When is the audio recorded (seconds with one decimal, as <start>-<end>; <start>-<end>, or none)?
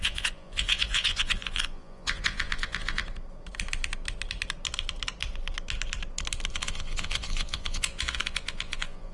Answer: 3.0-6.5